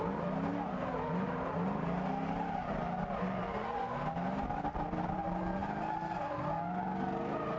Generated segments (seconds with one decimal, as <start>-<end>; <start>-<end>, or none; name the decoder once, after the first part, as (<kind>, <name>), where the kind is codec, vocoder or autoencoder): none

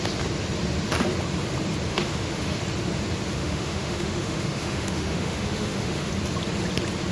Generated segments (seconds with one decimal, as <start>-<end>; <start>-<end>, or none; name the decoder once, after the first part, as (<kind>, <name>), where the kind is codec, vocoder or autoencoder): 1.9-2.6 (autoencoder, DAC-VAE); 3.4-6.1

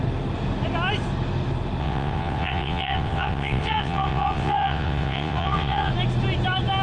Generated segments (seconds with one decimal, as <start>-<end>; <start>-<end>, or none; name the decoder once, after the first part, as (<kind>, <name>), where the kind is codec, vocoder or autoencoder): 1.8-5.9 (vocoder, WaveNeXt)

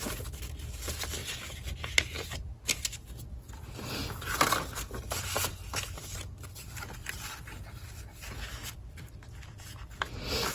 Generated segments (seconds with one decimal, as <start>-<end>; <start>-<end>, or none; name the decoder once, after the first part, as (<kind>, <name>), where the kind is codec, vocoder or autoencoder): none